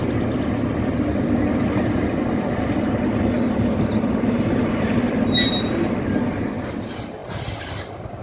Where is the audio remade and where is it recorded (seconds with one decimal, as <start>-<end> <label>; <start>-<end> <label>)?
0.0-8.2 recorded